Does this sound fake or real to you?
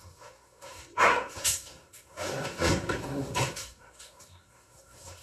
fake